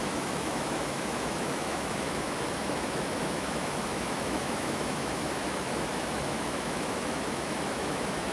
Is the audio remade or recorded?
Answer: remade